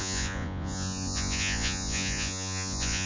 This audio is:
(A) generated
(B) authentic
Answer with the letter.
A